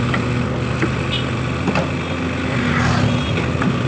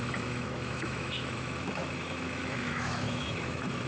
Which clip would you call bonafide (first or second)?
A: first